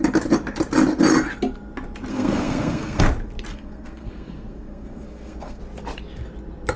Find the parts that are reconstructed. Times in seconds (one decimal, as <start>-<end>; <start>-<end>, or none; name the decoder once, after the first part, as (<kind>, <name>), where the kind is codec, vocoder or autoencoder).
2.1-3.0 (codec, SNAC); 3.5-5.6